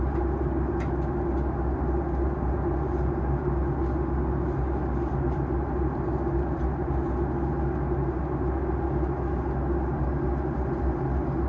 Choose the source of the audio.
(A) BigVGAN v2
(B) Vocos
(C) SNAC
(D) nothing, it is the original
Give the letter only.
D